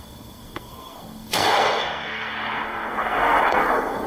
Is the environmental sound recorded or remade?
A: remade